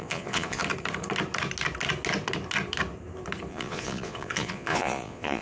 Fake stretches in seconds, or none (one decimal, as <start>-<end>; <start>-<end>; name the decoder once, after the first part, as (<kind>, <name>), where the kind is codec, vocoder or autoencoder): 0.0-0.6 (vocoder, Vocos); 3.5-5.4